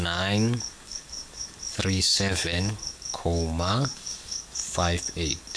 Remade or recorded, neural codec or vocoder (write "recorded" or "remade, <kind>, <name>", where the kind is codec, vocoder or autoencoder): remade, codec, DAC